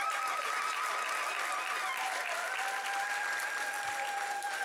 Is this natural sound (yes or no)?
yes